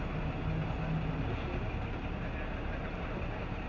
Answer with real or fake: real